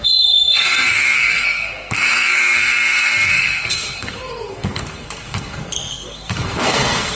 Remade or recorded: remade